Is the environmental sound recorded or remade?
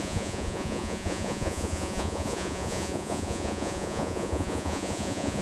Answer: remade